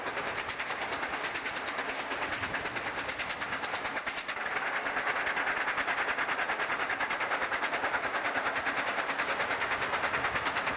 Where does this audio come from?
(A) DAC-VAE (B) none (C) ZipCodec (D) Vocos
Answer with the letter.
B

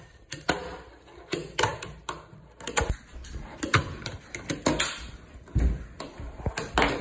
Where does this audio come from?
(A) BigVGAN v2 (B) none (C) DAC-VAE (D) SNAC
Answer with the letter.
B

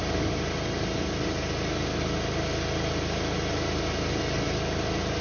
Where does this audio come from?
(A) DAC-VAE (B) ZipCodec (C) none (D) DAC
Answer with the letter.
C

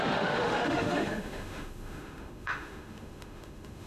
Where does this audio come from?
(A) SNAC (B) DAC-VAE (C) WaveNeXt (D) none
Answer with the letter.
B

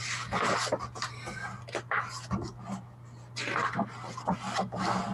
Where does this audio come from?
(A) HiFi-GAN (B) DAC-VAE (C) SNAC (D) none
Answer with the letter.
D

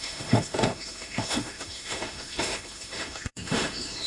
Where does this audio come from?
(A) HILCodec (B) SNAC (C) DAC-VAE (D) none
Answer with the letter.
C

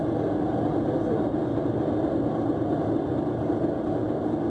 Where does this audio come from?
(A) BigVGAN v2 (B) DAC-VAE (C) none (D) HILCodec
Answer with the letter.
C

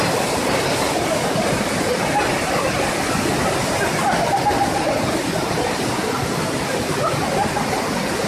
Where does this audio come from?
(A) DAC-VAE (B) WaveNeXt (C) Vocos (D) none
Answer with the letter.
D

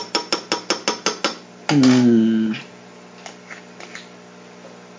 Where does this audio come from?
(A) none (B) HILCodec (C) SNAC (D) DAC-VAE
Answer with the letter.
A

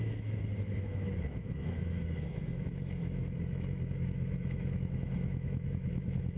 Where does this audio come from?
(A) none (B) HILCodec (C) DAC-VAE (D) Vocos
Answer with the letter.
C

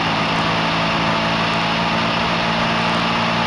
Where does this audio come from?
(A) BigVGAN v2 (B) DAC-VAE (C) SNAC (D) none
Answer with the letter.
D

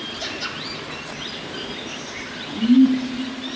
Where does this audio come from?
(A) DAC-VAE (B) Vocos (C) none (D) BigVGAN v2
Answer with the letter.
C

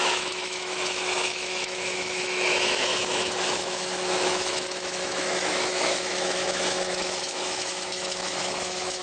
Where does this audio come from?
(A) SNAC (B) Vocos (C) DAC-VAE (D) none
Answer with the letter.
C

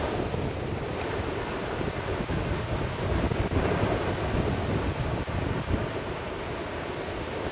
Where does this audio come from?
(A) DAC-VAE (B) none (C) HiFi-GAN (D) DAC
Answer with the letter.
B